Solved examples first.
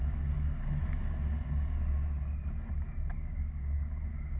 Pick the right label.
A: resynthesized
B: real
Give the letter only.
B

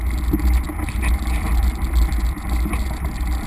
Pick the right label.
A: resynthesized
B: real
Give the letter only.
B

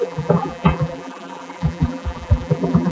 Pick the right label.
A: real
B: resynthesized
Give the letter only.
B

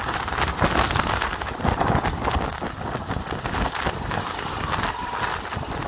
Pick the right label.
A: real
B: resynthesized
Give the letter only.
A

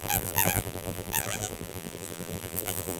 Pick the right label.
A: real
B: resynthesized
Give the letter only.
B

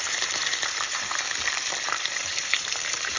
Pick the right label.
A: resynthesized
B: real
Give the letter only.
A